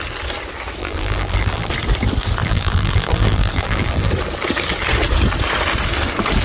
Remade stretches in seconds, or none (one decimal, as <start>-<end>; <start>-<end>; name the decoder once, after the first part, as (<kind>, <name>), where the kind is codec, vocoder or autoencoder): 0.8-1.7 (vocoder, BigVGAN v2); 2.4-4.1